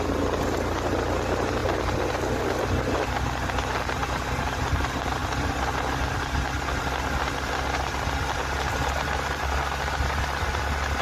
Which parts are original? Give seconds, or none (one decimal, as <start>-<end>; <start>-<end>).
0.0-11.0